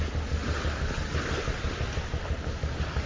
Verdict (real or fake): real